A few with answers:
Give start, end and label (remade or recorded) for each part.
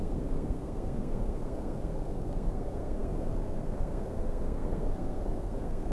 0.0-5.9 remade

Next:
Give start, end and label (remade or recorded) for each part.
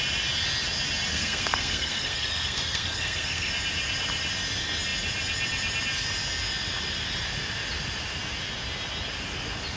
0.0-1.1 recorded; 1.1-3.5 remade; 3.5-9.8 recorded